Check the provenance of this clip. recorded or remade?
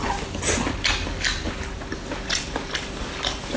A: recorded